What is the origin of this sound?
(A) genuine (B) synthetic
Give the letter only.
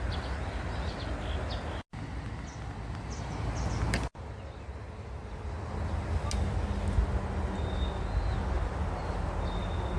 A